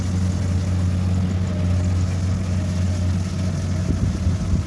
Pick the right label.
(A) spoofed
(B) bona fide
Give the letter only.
B